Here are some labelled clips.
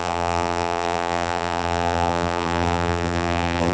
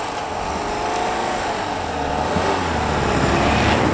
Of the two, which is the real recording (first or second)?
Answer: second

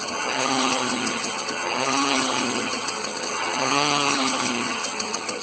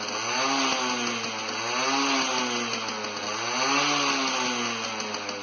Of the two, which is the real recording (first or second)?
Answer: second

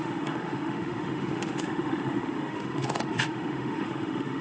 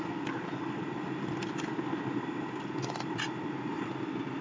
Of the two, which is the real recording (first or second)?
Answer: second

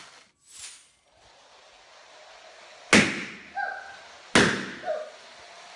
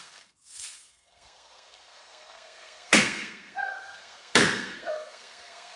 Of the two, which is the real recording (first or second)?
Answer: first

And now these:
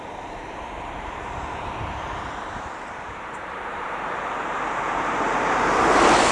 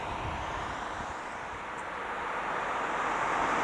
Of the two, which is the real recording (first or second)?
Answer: second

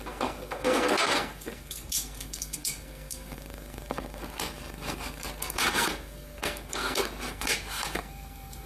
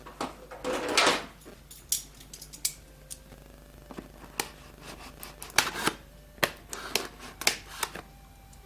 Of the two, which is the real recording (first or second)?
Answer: second